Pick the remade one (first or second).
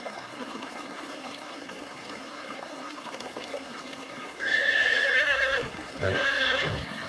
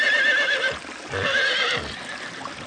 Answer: first